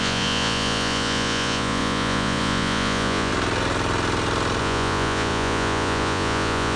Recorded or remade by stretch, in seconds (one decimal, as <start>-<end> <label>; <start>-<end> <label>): 0.0-3.3 remade; 3.3-4.6 recorded; 4.6-6.8 remade